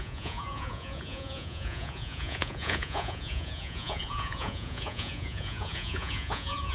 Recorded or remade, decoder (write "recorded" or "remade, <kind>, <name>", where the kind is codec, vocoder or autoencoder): remade, vocoder, Vocos